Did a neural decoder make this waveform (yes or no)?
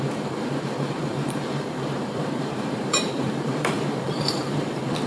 yes